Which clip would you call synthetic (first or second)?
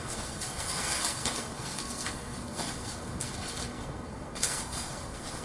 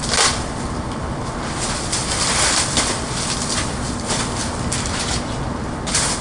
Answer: first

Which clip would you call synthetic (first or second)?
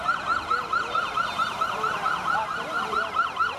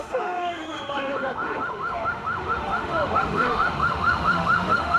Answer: second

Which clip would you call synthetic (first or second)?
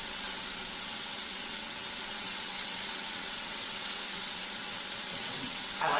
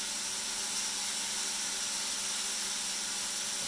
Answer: first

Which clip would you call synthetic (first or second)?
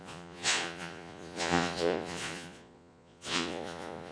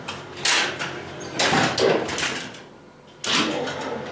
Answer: first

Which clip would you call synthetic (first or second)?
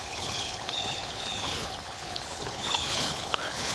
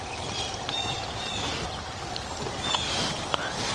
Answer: first